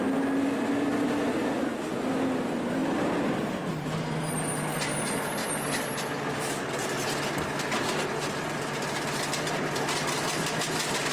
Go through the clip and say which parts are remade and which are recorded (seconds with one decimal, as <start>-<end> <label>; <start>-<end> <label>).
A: 0.0-2.8 recorded; 2.8-3.7 remade; 3.7-11.1 recorded